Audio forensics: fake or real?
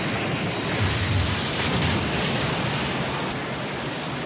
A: real